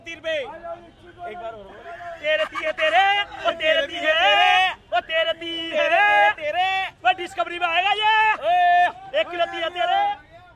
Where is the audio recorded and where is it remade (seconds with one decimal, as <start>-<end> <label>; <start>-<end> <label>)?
0.0-10.6 recorded